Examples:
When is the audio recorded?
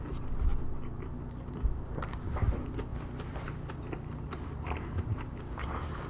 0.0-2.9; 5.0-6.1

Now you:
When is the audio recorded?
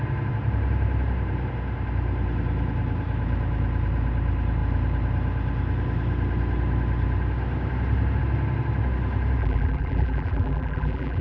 0.0-9.4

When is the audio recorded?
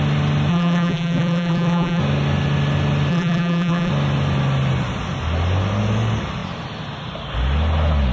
0.0-0.5; 2.0-3.1; 3.9-8.1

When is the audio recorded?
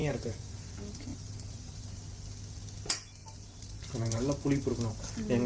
0.7-1.1; 1.9-3.2; 4.2-5.5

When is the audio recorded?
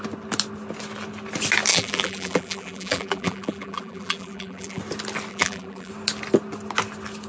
0.0-1.7; 4.8-5.3; 5.9-7.3